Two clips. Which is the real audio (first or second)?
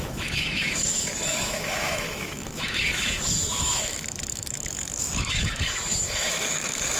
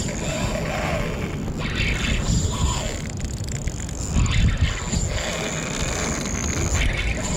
second